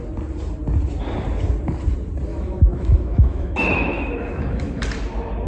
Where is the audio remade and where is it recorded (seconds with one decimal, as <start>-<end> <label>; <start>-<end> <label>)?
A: 0.0-2.3 recorded; 2.3-4.8 remade; 4.8-5.5 recorded